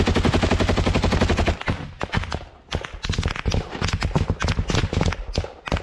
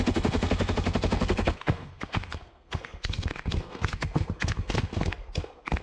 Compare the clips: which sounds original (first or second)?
first